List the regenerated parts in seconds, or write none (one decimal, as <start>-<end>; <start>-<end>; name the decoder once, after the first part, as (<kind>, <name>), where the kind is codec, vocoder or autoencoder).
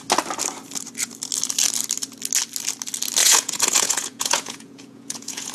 3.2-5.5 (vocoder, Vocos)